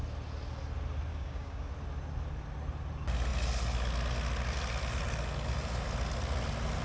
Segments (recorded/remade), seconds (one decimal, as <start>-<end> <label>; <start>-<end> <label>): 0.0-1.1 recorded; 1.1-1.7 remade; 1.7-6.8 recorded